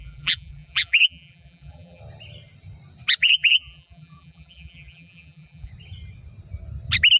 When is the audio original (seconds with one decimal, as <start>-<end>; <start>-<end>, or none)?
2.0-3.2; 5.7-7.2